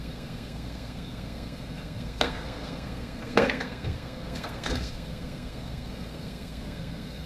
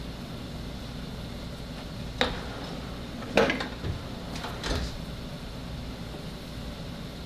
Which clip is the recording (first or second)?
second